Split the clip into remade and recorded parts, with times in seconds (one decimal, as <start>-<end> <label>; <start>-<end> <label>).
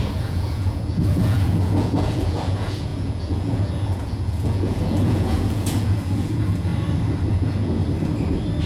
0.0-6.7 remade; 6.7-7.3 recorded; 7.3-7.8 remade; 7.8-8.7 recorded